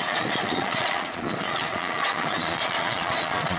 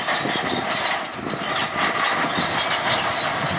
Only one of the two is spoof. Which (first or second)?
first